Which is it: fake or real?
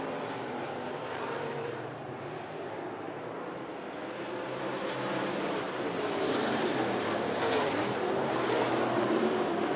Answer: fake